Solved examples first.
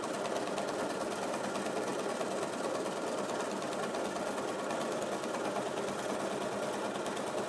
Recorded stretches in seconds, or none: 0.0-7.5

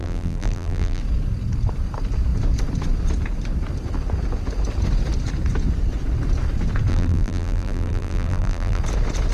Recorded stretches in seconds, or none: 1.0-6.9; 8.8-9.3

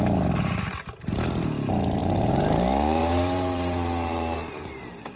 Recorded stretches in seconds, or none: 0.0-2.0; 2.6-3.0

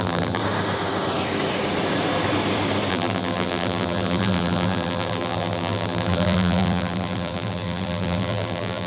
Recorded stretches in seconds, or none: 0.4-2.9

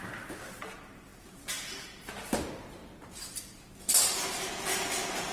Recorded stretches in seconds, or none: 2.8-4.3

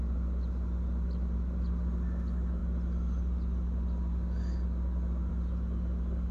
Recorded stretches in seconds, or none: 0.0-6.3

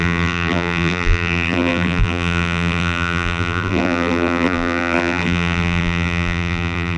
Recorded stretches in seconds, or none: none